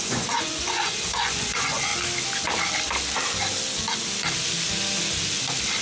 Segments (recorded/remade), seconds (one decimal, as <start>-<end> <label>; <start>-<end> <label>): 0.0-1.9 remade; 1.9-5.8 recorded